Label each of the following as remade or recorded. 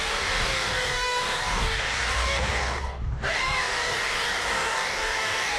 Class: remade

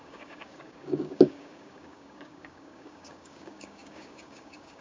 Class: remade